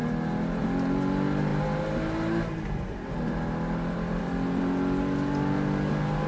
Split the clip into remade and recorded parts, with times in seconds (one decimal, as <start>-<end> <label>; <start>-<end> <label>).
0.0-6.3 recorded